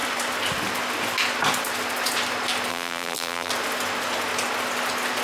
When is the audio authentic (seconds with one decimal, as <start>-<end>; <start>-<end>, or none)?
0.0-2.7; 3.5-5.2

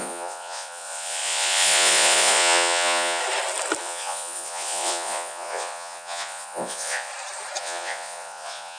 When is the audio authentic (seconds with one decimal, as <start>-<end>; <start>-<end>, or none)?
3.2-3.8; 7.1-7.6

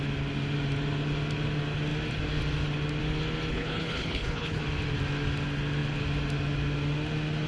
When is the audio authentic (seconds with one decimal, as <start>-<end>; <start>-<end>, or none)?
0.0-3.5; 4.6-7.5

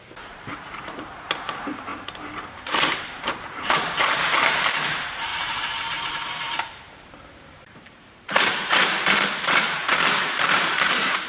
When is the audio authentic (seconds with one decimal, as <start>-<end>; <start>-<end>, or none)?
5.3-6.1

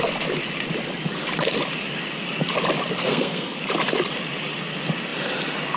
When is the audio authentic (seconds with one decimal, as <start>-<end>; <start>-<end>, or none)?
0.0-3.0; 3.6-5.8

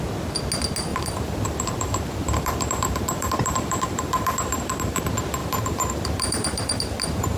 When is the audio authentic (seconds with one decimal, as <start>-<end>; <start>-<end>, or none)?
0.0-0.9; 5.0-5.4

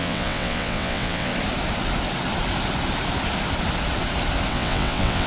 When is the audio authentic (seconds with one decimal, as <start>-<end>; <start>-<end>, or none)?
1.3-4.5

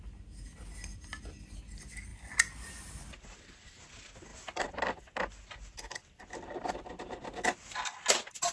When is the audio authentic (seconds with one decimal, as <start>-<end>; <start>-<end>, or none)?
0.0-8.5